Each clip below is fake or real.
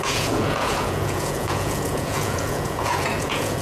fake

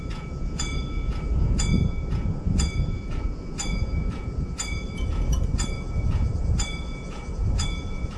fake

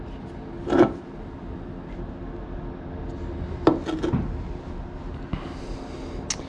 real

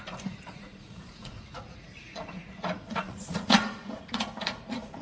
fake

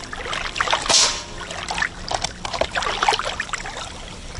real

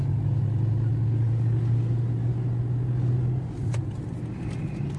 real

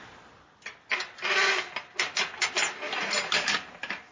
real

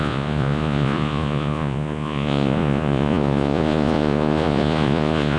fake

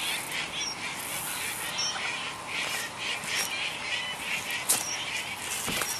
real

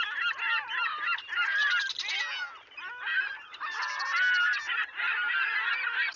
real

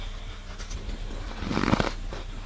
real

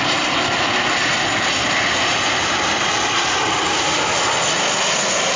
real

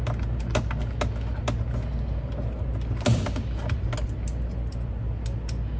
real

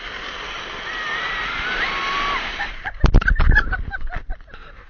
real